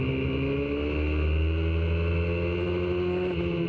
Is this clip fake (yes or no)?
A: no